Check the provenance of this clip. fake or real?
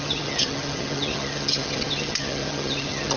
fake